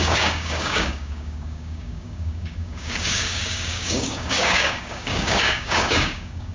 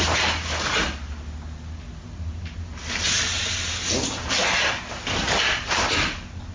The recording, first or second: second